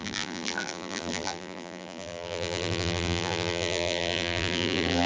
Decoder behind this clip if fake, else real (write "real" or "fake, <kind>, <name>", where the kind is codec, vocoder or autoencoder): fake, vocoder, BigVGAN v2